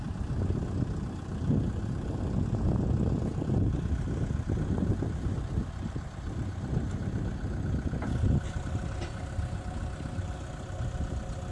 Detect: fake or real real